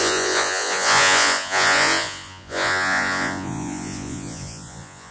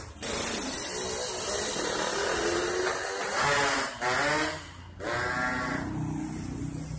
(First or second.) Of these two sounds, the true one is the second